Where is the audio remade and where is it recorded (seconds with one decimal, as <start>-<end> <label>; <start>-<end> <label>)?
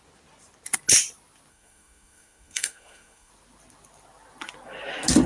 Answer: 0.0-1.5 recorded; 1.5-3.3 remade; 3.3-5.3 recorded